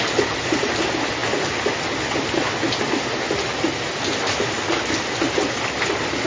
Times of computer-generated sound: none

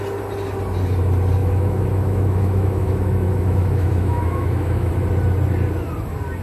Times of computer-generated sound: 1.4-4.9 (autoencoder, DAC-VAE)

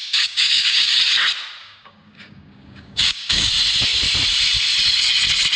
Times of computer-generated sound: 0.0-1.0 (codec, DAC); 1.6-3.5

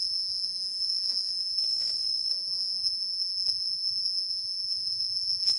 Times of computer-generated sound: 0.0-1.6 (vocoder, Vocos); 2.3-5.6

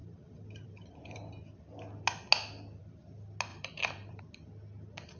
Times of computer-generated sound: 0.0-1.6 (vocoder, BigVGAN v2); 3.5-4.2

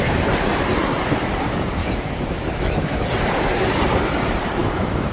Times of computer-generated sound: 1.8-3.0 (autoencoder, DAC-VAE); 4.6-5.1

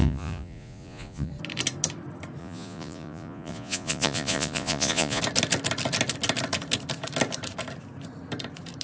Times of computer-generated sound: 0.0-1.3 (vocoder, Vocos); 2.4-5.2

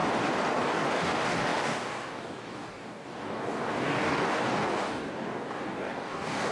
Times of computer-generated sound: 0.6-6.5 (codec, DAC)